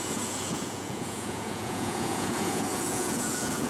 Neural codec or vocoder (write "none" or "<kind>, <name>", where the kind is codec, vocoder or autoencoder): vocoder, Vocos